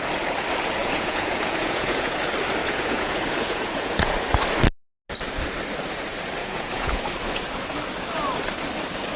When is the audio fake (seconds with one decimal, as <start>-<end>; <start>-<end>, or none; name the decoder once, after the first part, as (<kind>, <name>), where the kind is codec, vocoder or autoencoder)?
0.8-2.2 (vocoder, Vocos); 2.6-4.1; 6.4-7.0